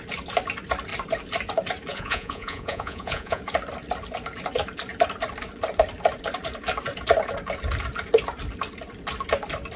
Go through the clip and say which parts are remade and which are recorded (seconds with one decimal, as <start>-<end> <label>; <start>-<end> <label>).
0.0-1.9 recorded; 1.9-3.4 remade; 3.4-9.8 recorded